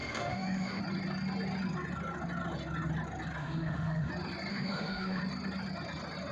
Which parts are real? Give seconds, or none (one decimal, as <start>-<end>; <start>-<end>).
0.8-3.4; 4.1-4.5; 5.2-6.3